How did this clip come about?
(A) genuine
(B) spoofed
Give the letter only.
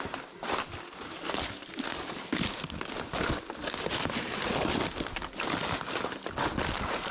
A